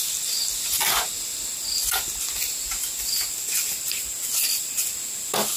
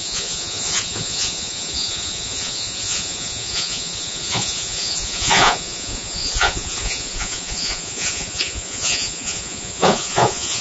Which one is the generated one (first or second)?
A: second